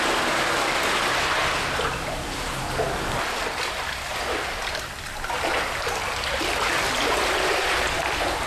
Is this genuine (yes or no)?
yes